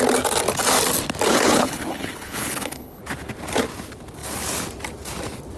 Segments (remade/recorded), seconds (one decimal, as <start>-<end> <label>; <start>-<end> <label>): 0.0-1.3 recorded; 1.3-3.0 remade; 3.0-5.6 recorded